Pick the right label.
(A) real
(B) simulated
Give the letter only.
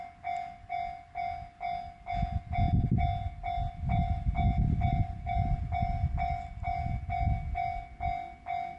A